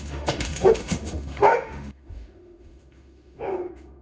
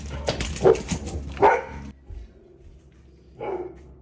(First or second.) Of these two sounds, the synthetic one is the first